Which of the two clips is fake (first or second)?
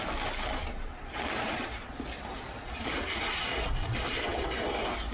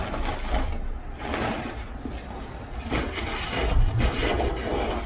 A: first